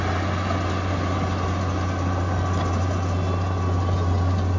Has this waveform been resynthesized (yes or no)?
no